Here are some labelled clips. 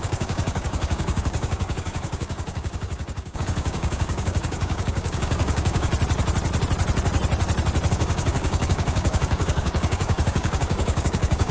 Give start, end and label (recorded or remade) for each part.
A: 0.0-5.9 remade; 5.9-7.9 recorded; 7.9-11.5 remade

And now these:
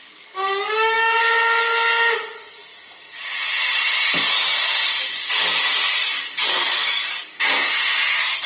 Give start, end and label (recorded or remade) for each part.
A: 0.0-1.2 remade; 1.2-6.0 recorded; 6.0-7.4 remade; 7.4-8.5 recorded

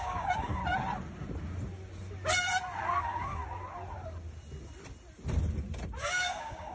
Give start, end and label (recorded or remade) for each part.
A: 0.0-0.6 remade; 0.6-3.0 recorded; 3.0-3.4 remade; 3.4-6.0 recorded; 6.0-6.7 remade

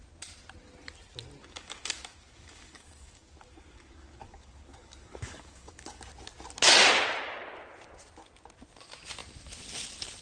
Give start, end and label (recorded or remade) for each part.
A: 0.0-1.4 recorded; 1.4-6.0 remade; 6.0-10.2 recorded

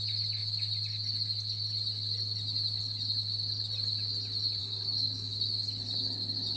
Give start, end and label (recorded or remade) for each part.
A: 0.0-4.6 recorded; 4.6-6.0 remade; 6.0-6.6 recorded

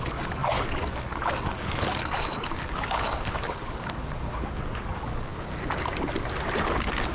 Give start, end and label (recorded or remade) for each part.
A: 0.0-5.3 remade; 5.3-7.1 recorded